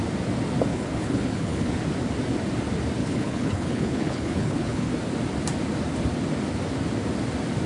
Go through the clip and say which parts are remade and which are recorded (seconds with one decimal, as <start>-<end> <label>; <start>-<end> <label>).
0.0-0.7 recorded; 0.7-1.7 remade; 1.7-3.0 recorded; 3.0-4.9 remade; 4.9-7.7 recorded